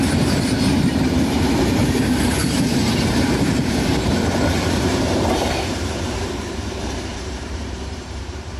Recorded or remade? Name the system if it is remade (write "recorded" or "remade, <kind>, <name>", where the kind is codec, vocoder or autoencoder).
remade, vocoder, BigVGAN v2